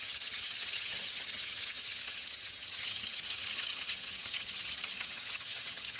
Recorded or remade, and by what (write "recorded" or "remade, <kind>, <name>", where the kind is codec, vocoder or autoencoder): remade, vocoder, HiFi-GAN